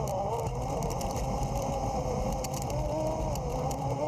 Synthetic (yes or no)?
yes